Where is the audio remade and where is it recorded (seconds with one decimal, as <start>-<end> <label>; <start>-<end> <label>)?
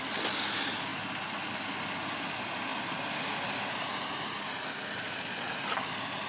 0.0-6.3 recorded